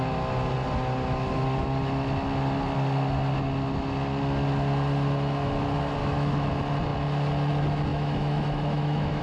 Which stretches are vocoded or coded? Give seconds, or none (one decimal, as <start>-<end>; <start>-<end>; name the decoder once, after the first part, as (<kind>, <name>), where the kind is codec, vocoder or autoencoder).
6.0-6.5 (autoencoder, DAC-VAE); 7.9-9.2